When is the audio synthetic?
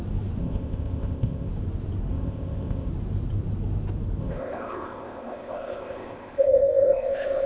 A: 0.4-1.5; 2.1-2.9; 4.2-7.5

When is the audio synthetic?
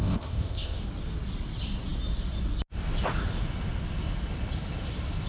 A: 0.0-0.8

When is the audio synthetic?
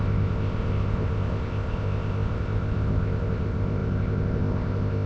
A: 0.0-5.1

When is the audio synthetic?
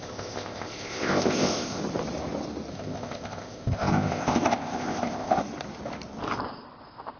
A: 0.0-1.8; 2.7-5.4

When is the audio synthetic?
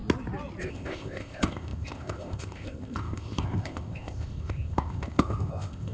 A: 0.6-5.9